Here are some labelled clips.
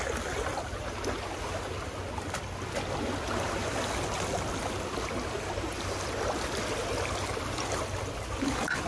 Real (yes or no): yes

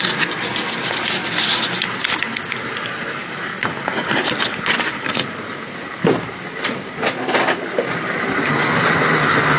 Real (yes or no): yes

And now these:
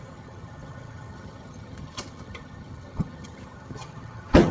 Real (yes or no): no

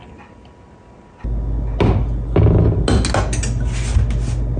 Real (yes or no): yes